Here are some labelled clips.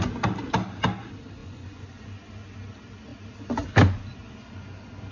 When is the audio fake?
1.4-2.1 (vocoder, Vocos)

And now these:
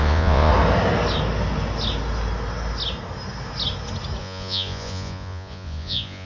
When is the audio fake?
0.0-0.5 (vocoder, Vocos); 4.2-6.2

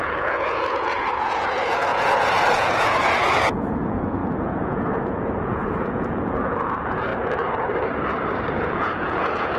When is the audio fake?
0.0-7.1 (vocoder, Vocos); 8.6-9.6

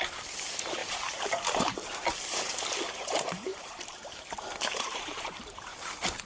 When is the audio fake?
0.0-6.3 (vocoder, BigVGAN v2)